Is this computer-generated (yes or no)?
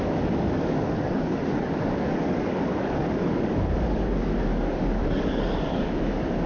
yes